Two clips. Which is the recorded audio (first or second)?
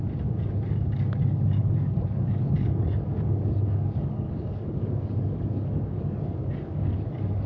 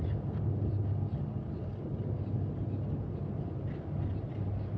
second